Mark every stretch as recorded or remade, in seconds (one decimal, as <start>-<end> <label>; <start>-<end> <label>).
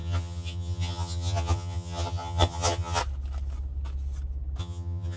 0.0-3.0 remade; 3.0-4.6 recorded; 4.6-5.2 remade